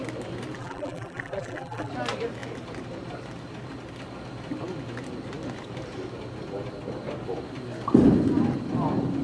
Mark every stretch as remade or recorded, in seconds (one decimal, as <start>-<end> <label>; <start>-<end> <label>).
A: 0.0-0.6 recorded; 0.6-1.9 remade; 1.9-9.2 recorded